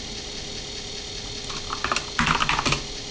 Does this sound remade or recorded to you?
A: recorded